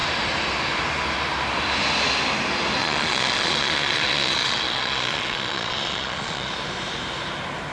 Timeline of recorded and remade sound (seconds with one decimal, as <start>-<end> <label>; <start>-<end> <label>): 0.0-2.8 recorded; 2.8-6.5 remade; 6.5-7.7 recorded